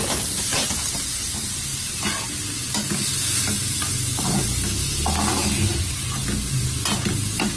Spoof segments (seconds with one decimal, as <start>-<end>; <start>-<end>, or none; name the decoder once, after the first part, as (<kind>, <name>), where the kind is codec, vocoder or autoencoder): none